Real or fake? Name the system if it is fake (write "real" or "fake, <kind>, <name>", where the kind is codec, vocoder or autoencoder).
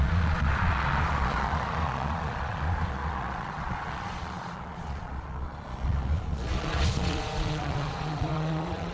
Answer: fake, vocoder, Vocos